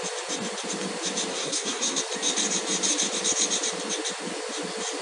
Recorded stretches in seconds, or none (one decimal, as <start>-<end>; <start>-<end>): 0.0-1.3; 2.0-5.0